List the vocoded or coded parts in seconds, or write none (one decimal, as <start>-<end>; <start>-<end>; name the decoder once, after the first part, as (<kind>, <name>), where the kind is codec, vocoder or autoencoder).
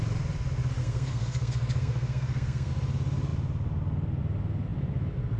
0.8-2.7 (codec, SNAC)